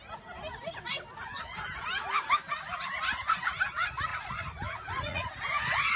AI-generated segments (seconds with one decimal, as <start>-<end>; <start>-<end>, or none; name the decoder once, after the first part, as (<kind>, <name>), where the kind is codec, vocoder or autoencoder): 4.1-5.3 (vocoder, Vocos)